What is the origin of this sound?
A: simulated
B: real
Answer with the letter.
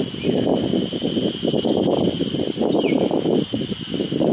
B